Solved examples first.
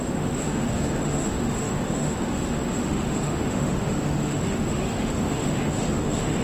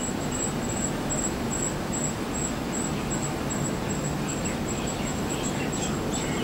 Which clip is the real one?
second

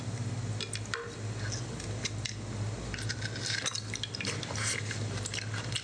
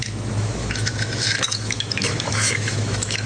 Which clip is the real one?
first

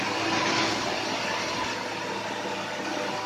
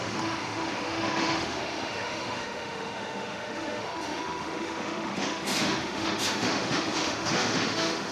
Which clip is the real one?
first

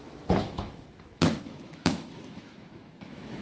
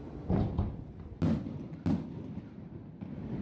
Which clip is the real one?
second